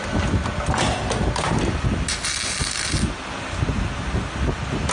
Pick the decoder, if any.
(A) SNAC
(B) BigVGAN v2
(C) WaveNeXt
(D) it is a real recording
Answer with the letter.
D